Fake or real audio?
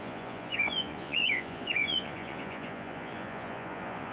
fake